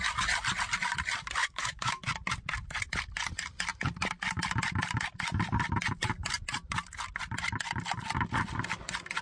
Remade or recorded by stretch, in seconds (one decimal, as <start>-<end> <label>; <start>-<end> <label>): 0.0-1.4 recorded; 1.4-2.0 remade; 2.0-9.2 recorded